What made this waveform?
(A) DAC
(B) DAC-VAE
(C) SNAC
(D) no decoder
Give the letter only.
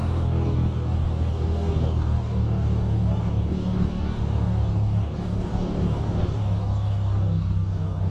A